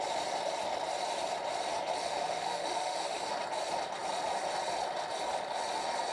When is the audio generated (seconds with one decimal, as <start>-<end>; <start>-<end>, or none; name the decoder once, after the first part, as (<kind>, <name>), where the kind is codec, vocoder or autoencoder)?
2.0-3.3 (autoencoder, DAC-VAE)